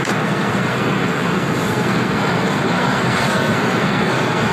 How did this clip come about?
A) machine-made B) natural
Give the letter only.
A